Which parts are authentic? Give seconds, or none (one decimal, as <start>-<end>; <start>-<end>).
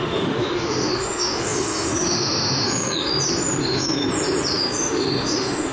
3.1-3.6; 4.0-4.6